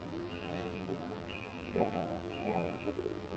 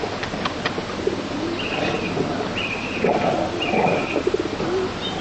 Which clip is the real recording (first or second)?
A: second